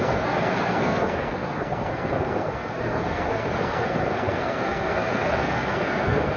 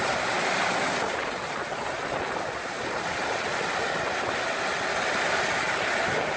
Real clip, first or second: second